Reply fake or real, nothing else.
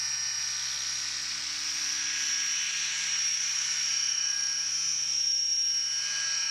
real